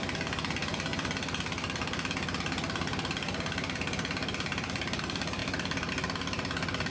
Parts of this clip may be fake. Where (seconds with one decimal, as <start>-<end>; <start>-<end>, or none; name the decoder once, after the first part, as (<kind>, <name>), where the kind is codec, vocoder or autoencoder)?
none